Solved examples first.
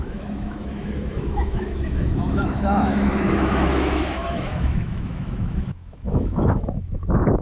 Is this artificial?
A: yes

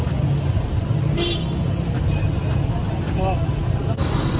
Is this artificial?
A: no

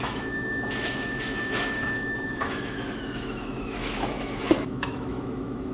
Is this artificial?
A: yes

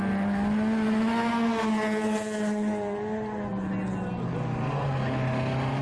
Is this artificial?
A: no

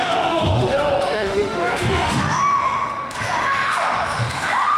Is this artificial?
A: yes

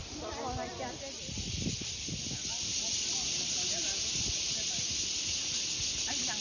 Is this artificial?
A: no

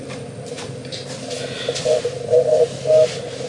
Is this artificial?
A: no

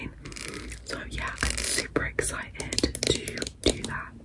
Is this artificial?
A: no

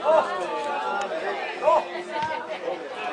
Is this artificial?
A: no